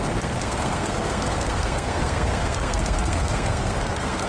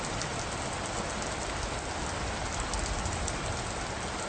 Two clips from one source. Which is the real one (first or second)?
second